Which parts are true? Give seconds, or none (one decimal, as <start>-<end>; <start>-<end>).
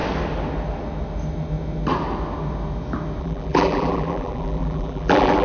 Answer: 0.0-3.2